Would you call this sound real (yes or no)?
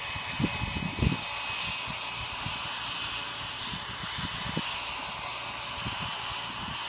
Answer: yes